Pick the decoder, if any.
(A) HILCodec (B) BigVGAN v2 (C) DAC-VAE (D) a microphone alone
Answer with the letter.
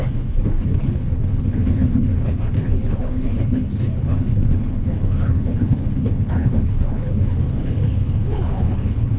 A